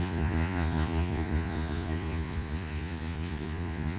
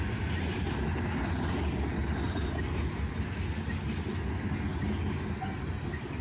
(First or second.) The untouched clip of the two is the second